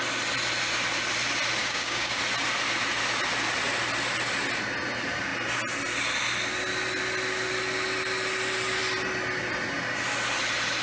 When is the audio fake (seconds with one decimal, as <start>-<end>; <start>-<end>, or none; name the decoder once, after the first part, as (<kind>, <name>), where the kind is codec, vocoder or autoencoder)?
1.6-2.2 (codec, DAC)